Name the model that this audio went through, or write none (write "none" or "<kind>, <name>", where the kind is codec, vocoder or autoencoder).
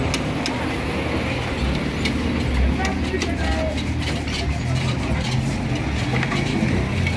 none